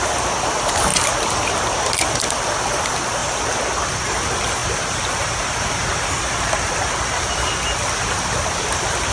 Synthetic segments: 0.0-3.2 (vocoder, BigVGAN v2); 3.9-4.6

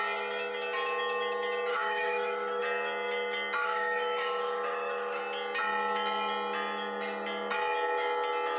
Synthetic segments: 1.7-2.6 (autoencoder, DAC-VAE); 3.6-5.2

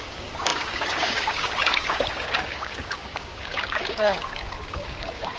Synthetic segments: 0.0-5.4 (codec, DAC)

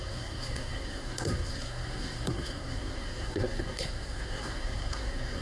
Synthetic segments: 0.0-5.4 (codec, SNAC)

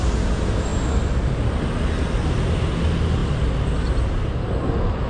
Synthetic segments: none

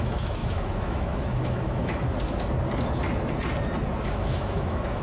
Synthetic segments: 0.0-2.1 (autoencoder, DAC-VAE); 4.0-5.0

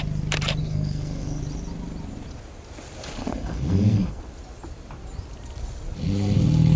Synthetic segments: 0.6-1.4 (codec, SNAC); 3.2-4.2

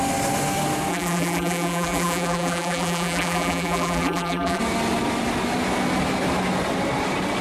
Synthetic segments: 0.9-4.6 (vocoder, BigVGAN v2)